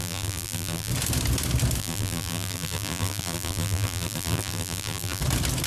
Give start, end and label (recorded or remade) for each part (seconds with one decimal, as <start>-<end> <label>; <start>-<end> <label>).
0.0-0.9 remade; 0.9-1.8 recorded; 1.8-5.2 remade; 5.2-5.7 recorded

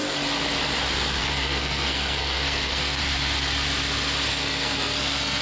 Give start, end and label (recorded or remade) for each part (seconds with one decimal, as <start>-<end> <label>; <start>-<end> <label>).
0.0-1.2 recorded; 1.2-3.0 remade; 3.0-4.3 recorded; 4.3-5.4 remade

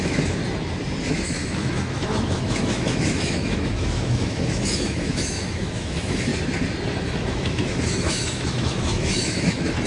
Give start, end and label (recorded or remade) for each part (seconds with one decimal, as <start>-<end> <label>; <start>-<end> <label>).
0.0-0.4 remade; 0.4-1.1 recorded; 1.1-6.3 remade; 6.3-7.0 recorded; 7.0-9.9 remade

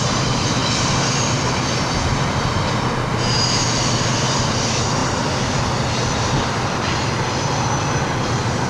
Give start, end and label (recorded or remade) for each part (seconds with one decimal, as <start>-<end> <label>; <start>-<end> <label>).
0.0-8.7 recorded

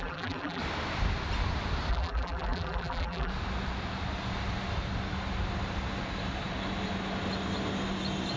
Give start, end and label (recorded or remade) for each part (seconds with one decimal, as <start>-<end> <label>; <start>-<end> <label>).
0.0-0.6 remade; 0.6-1.9 recorded; 1.9-3.3 remade; 3.3-8.4 recorded

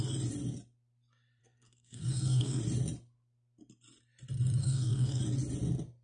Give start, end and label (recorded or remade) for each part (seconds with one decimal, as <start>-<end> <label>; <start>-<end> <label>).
0.0-1.4 recorded; 1.4-2.6 remade; 2.6-4.6 recorded; 4.6-5.2 remade; 5.2-6.0 recorded